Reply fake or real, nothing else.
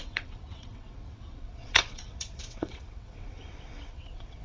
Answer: fake